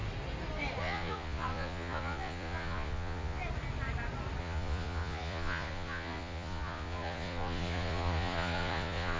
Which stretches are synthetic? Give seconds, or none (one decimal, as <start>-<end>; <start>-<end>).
0.8-3.4; 4.4-9.2